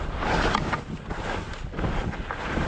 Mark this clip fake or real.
real